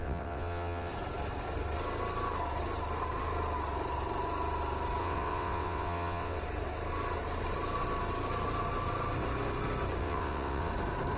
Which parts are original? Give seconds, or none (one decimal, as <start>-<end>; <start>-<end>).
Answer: 0.9-5.0; 6.4-10.0; 10.7-11.2